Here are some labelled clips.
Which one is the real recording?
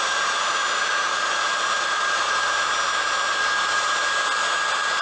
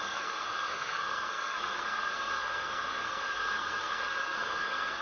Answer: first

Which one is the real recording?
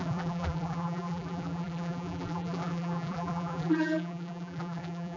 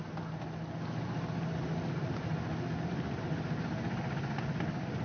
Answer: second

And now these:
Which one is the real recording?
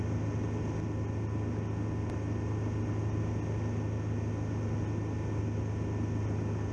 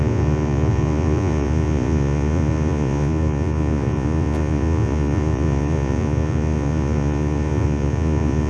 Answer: first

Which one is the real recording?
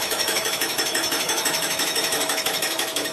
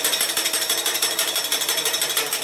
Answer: second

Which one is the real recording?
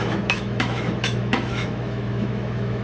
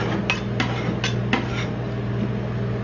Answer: second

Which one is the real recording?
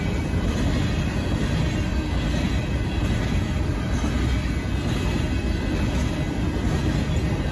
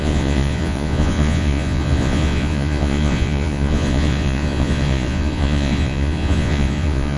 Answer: first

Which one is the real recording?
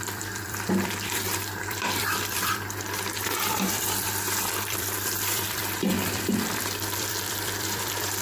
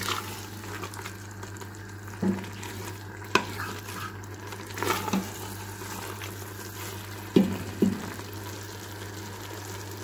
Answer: second